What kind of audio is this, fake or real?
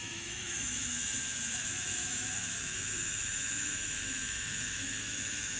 fake